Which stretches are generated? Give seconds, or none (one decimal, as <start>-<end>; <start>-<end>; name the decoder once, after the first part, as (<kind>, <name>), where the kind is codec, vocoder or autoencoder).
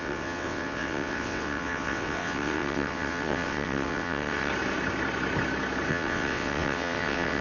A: 0.0-4.5 (vocoder, WaveNeXt); 5.9-7.4